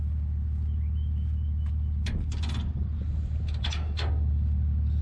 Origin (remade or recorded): recorded